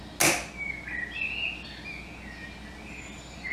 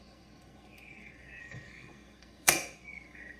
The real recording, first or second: first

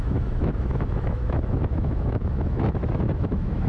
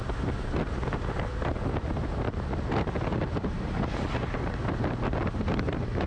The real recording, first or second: second